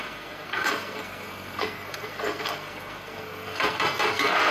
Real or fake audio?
fake